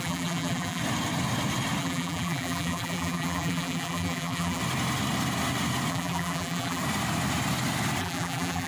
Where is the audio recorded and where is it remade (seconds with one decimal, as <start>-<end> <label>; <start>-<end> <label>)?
0.0-0.8 remade; 0.8-1.8 recorded; 1.8-4.6 remade; 4.6-5.9 recorded; 5.9-6.8 remade; 6.8-8.0 recorded; 8.0-8.7 remade

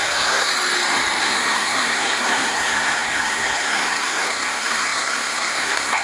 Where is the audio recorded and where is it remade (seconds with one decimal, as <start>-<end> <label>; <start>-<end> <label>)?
0.0-0.5 remade; 0.5-1.2 recorded; 1.2-6.0 remade

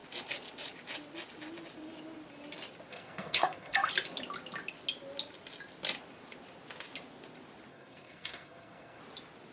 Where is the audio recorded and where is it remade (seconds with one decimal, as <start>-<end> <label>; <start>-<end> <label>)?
0.0-2.9 recorded; 2.9-3.9 remade; 3.9-7.7 recorded; 7.7-9.0 remade; 9.0-9.5 recorded

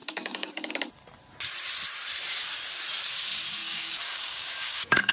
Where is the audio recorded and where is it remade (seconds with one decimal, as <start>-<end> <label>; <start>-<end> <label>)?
0.0-0.7 remade; 0.7-3.6 recorded; 3.6-5.1 remade

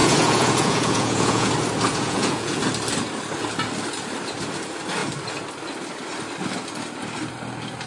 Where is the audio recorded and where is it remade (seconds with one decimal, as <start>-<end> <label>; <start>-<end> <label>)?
0.0-1.5 remade; 1.5-1.9 recorded; 1.9-2.6 remade; 2.6-7.9 recorded

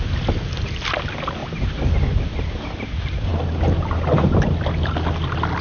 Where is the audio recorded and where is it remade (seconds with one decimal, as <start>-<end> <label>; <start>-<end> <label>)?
0.0-5.6 recorded